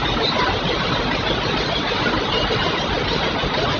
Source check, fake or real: real